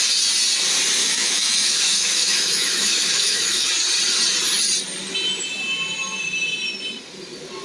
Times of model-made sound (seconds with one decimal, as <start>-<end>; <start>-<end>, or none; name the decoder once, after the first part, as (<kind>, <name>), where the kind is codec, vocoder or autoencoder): 1.0-3.7 (autoencoder, DAC-VAE)